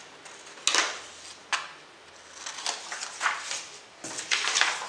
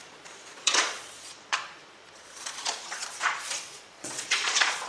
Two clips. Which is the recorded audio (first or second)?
first